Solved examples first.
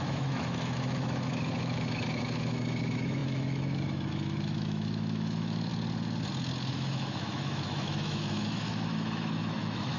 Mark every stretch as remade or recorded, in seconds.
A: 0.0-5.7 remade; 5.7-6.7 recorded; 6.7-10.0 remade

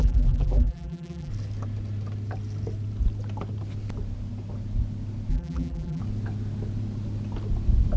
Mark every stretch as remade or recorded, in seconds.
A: 0.0-1.3 remade; 1.3-5.3 recorded; 5.3-6.0 remade; 6.0-8.0 recorded

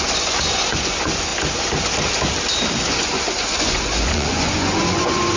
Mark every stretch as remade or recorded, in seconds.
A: 0.0-1.3 remade; 1.3-2.9 recorded; 2.9-5.4 remade